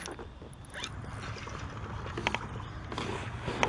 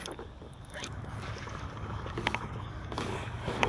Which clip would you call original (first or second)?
first